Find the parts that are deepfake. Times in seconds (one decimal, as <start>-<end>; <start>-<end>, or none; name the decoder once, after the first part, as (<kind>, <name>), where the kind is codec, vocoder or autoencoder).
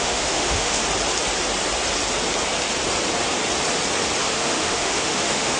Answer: 0.0-0.8 (autoencoder, DAC-VAE); 4.2-5.6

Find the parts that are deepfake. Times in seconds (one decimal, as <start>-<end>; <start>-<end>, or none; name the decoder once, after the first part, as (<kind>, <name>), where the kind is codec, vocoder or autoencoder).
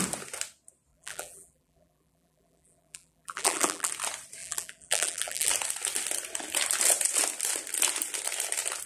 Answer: 0.9-3.9 (vocoder, BigVGAN v2); 4.4-5.5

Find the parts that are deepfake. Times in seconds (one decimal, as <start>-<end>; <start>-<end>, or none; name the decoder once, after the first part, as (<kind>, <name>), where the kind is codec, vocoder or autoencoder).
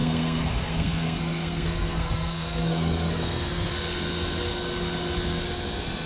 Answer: 0.0-3.7 (codec, SNAC)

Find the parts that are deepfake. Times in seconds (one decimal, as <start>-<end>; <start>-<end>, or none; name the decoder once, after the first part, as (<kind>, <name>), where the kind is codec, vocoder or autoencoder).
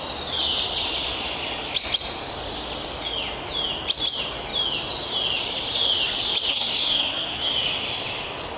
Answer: 6.5-7.5 (codec, SNAC)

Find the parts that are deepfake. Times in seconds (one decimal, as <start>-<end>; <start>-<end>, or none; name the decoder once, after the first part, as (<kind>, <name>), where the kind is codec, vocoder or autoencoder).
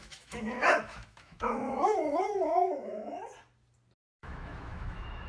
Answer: 0.0-3.2 (autoencoder, DAC-VAE); 4.2-5.3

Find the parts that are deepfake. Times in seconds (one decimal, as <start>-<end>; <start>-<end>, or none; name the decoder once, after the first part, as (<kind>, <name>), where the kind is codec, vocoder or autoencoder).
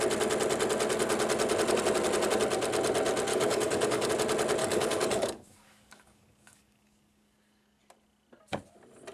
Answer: 3.3-4.1 (codec, DAC); 4.6-7.8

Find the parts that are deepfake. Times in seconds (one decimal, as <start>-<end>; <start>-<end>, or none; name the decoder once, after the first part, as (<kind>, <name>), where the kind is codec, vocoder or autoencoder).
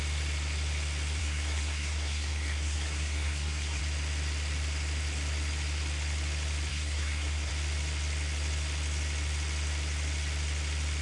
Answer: 1.2-3.8 (codec, SNAC); 6.7-7.5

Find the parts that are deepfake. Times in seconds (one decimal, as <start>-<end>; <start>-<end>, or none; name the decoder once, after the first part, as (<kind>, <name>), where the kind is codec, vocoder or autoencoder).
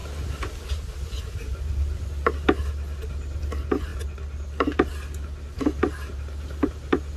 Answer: none